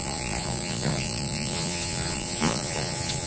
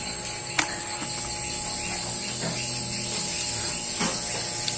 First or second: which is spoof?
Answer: first